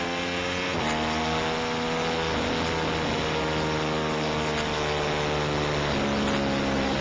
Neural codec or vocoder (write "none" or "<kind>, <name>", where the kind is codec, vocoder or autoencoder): none